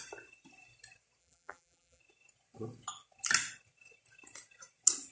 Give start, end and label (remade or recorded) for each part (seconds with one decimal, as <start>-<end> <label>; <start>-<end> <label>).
0.0-1.2 recorded; 1.2-2.0 remade; 2.0-5.1 recorded